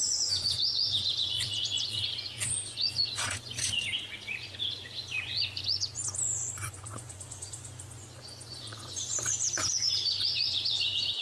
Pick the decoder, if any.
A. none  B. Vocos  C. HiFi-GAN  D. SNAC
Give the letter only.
B